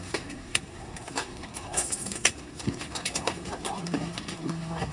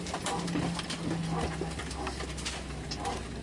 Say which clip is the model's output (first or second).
first